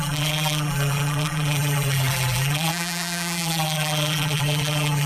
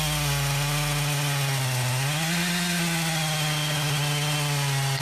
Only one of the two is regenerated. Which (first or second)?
first